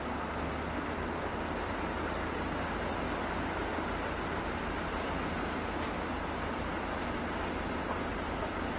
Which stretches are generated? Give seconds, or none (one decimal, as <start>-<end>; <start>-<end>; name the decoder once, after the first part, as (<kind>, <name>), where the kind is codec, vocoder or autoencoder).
none